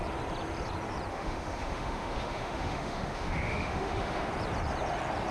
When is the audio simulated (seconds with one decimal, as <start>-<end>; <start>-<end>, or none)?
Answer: 1.1-4.3